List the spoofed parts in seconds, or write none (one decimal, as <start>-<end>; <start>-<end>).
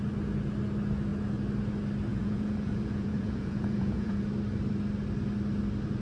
2.1-4.2